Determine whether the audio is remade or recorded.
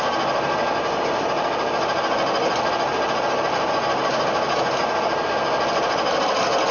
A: recorded